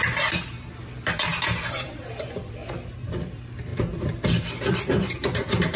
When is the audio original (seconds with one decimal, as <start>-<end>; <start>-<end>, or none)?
2.6-3.2; 3.7-4.7